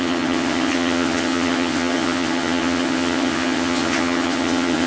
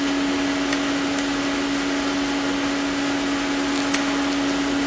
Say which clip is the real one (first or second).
second